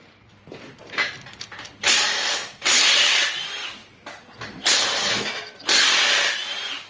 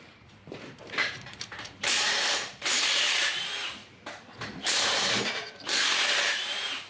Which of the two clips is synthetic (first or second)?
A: second